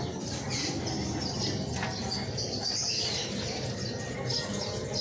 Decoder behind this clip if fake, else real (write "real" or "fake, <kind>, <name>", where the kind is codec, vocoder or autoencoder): real